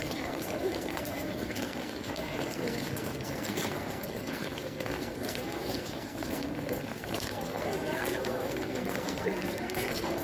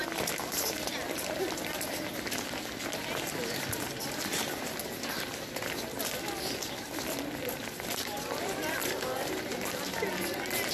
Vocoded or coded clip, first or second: first